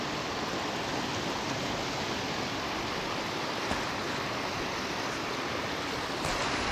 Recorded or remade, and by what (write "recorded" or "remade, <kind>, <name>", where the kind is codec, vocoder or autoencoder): recorded